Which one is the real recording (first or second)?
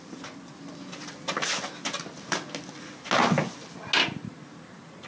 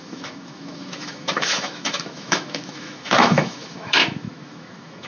first